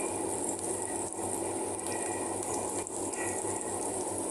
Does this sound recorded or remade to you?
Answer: recorded